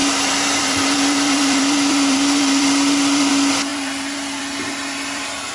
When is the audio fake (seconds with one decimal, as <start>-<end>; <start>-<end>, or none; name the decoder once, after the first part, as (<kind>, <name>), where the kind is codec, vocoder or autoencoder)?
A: 0.0-3.3 (vocoder, BigVGAN v2); 3.7-4.4